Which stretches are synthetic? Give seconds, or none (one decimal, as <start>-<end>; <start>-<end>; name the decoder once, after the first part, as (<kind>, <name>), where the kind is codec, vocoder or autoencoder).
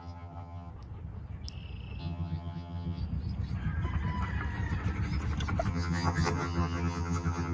0.0-0.7 (vocoder, HiFi-GAN); 2.0-3.0; 5.7-7.5